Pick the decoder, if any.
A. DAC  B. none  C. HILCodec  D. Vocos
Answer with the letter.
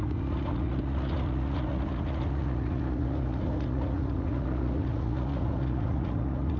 D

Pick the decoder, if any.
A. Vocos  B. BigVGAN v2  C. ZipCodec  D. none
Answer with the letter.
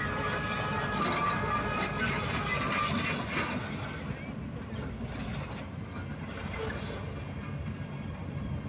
D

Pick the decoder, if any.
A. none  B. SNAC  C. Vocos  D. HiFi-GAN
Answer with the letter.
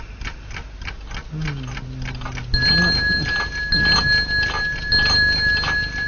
A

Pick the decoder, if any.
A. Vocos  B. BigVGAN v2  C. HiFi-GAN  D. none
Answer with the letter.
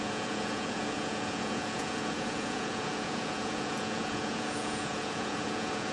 A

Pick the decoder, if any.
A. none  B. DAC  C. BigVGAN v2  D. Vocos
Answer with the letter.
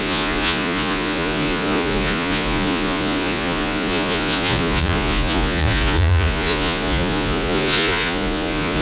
D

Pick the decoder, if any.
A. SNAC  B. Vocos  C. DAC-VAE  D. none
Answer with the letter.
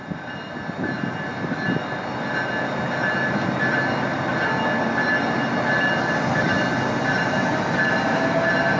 D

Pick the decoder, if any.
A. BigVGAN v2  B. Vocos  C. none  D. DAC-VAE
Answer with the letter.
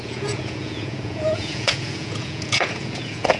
B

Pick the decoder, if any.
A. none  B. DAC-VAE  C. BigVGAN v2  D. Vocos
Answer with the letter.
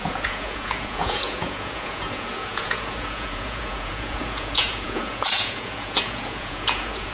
D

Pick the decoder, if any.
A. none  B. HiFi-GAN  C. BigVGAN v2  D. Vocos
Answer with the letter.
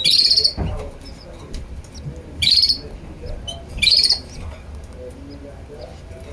A